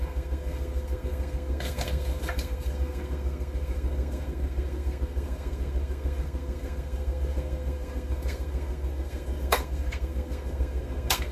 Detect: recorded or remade remade